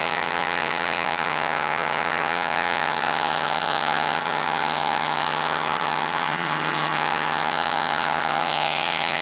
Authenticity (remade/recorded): remade